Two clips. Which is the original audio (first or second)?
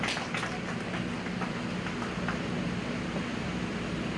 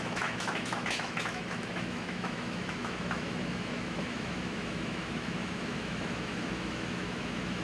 first